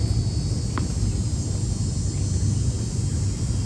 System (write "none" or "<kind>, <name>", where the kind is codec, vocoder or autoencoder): none